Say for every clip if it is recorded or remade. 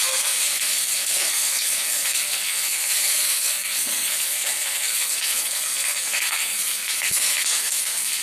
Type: remade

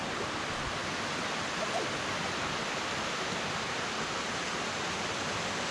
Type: recorded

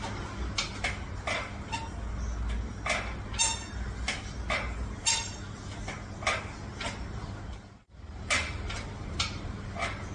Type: recorded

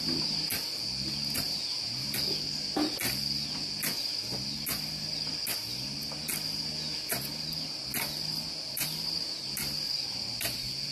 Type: recorded